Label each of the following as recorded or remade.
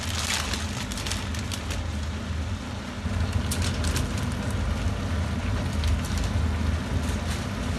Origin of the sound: recorded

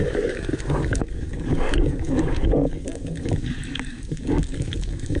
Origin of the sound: remade